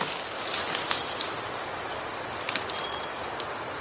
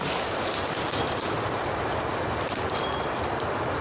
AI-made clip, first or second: second